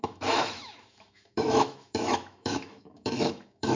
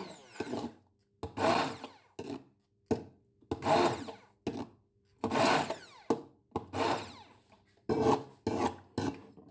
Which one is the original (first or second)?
second